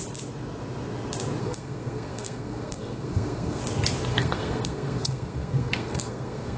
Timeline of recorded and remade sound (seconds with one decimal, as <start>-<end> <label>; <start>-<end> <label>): 0.0-1.4 recorded; 1.4-3.6 remade; 3.6-4.1 recorded; 4.1-6.6 remade

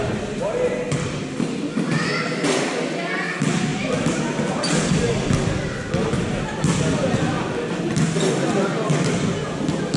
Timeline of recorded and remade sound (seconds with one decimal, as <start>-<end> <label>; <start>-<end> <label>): 0.0-3.7 recorded; 3.7-4.3 remade; 4.3-10.0 recorded

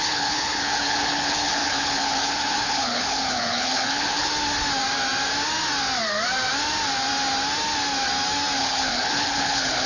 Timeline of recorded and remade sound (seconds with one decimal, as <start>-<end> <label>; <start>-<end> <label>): 0.0-4.3 remade; 4.3-8.6 recorded; 8.6-9.9 remade

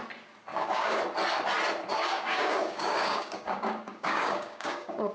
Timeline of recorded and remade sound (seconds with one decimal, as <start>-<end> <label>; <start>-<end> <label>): 0.0-0.5 recorded; 0.5-1.0 remade; 1.0-1.9 recorded; 1.9-5.1 remade